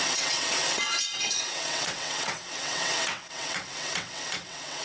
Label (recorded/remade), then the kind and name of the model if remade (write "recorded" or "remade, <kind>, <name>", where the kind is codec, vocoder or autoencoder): remade, vocoder, WaveNeXt